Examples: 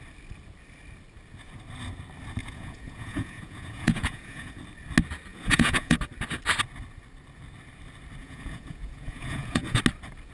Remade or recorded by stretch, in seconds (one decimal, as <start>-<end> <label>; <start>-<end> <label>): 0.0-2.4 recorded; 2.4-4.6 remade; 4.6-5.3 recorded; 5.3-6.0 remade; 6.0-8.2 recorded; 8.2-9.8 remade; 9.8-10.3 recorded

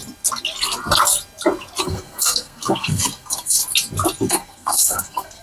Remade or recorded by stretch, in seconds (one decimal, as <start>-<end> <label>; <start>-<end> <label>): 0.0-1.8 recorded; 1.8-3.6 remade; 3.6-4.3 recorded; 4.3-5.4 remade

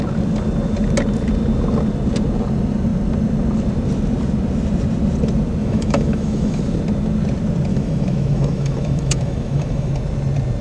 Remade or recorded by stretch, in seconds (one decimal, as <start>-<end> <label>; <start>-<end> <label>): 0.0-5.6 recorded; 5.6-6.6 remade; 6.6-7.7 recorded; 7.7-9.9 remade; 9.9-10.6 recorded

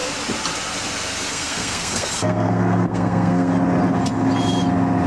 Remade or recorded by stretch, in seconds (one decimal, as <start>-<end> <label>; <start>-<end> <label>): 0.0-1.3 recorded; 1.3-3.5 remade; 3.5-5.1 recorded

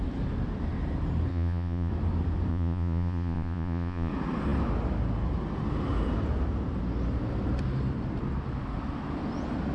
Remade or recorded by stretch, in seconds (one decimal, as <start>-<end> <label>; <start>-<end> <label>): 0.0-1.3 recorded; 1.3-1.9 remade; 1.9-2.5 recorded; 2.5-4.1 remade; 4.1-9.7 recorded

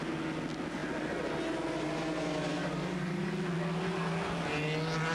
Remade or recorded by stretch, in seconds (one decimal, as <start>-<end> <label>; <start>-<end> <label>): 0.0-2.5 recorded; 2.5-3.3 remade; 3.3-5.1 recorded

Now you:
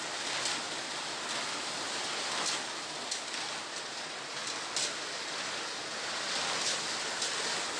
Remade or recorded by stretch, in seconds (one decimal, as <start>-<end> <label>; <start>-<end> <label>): 0.0-7.8 recorded

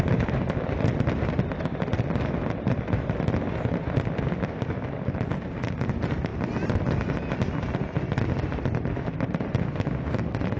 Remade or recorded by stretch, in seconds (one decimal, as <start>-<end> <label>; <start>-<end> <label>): 0.0-10.6 recorded